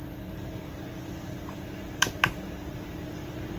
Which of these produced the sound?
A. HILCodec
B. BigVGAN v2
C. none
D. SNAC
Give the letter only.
C